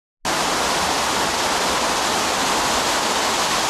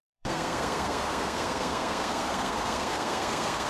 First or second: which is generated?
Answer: second